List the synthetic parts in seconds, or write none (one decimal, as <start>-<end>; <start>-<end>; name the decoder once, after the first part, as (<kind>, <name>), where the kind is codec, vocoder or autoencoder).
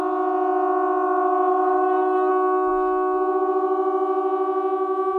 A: 1.5-2.3 (codec, DAC)